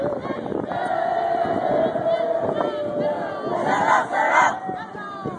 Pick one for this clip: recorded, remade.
recorded